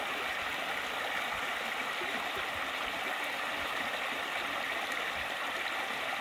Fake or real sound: real